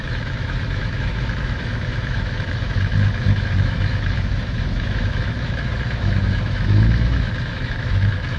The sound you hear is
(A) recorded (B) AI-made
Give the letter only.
B